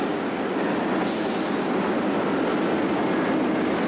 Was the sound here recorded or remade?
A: recorded